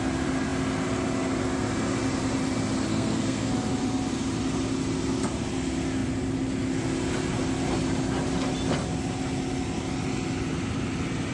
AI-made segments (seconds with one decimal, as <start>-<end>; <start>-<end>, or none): 2.9-3.5